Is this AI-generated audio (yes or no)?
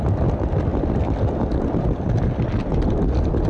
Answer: no